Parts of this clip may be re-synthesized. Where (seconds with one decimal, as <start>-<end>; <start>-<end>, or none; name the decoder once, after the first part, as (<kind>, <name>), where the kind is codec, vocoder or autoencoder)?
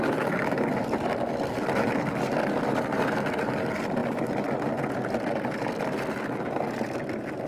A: none